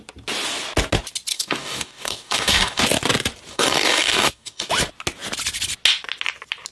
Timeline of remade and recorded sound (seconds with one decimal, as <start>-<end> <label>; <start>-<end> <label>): 0.0-1.3 recorded; 1.3-2.8 remade; 2.8-3.5 recorded; 3.5-4.7 remade; 4.7-6.7 recorded